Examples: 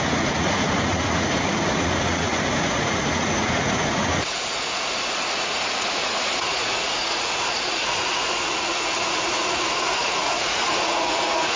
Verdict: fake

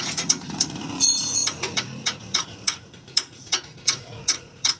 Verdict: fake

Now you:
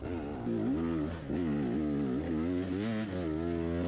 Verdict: real